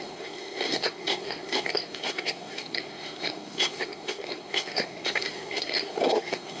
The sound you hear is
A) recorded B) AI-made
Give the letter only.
B